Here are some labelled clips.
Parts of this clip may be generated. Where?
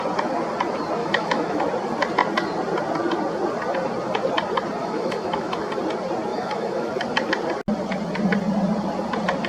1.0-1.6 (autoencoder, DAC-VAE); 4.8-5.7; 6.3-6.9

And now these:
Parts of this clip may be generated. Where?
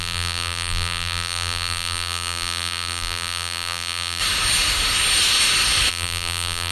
0.0-4.2 (vocoder, BigVGAN v2); 5.9-6.7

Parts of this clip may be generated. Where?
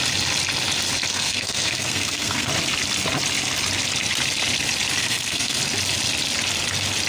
1.1-2.5 (codec, SNAC); 5.0-5.6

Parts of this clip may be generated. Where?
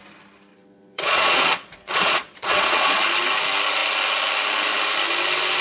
0.5-3.0 (vocoder, Vocos)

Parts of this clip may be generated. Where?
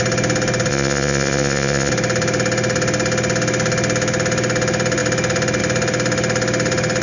0.7-1.9 (vocoder, Vocos)